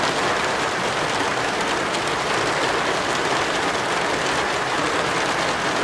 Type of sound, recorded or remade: recorded